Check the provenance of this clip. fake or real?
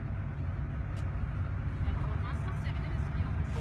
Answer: real